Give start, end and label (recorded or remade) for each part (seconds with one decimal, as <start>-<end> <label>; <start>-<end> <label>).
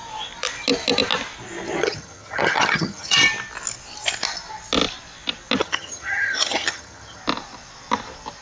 0.0-1.8 recorded; 1.8-3.2 remade; 3.2-5.6 recorded; 5.6-7.2 remade; 7.2-8.4 recorded